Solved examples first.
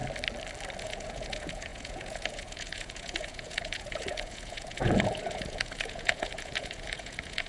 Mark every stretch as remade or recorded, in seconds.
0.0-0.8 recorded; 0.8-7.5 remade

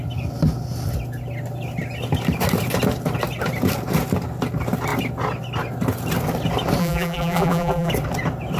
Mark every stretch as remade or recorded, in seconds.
0.0-6.8 recorded; 6.8-7.9 remade; 7.9-8.6 recorded

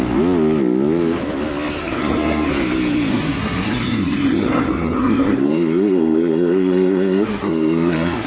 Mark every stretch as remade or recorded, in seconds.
0.0-1.8 recorded; 1.8-2.5 remade; 2.5-3.1 recorded; 3.1-8.3 remade

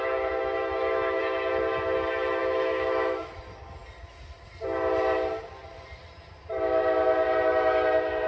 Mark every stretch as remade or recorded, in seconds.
0.0-0.4 recorded; 0.4-1.2 remade; 1.2-2.4 recorded; 2.4-3.4 remade; 3.4-8.3 recorded

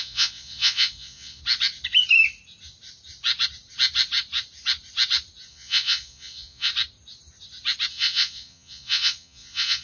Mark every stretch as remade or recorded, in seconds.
0.0-1.4 remade; 1.4-5.5 recorded; 5.5-6.7 remade; 6.7-7.9 recorded; 7.9-9.8 remade

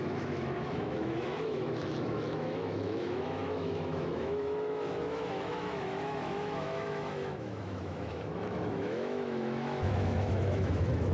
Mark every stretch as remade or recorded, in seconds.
0.0-11.1 remade